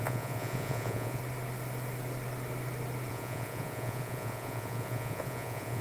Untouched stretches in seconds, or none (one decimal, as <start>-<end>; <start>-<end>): 1.2-3.1